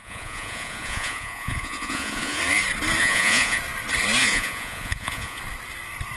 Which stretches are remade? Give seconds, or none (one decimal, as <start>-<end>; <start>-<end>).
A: 0.0-2.4; 3.0-3.6; 4.2-5.4